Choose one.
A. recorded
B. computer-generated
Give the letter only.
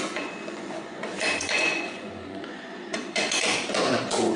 B